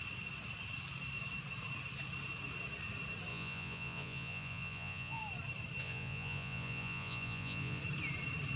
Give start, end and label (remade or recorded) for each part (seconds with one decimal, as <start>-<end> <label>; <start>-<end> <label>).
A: 0.0-3.3 recorded; 3.3-5.2 remade; 5.2-5.8 recorded; 5.8-7.8 remade; 7.8-8.6 recorded